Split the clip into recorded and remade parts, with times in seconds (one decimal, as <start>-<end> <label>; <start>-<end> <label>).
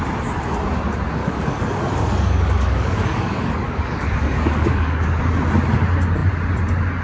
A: 0.0-1.2 recorded; 1.2-5.2 remade; 5.2-7.0 recorded